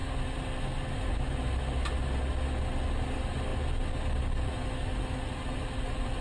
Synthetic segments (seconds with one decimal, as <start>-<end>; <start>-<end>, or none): none